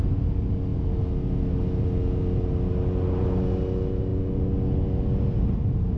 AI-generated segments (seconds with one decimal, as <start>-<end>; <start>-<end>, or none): none